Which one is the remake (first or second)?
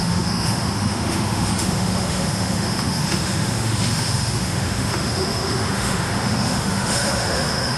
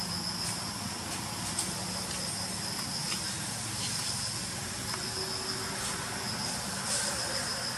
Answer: first